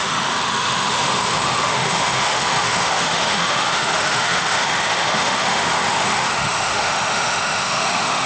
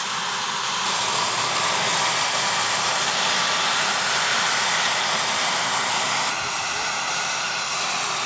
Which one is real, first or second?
second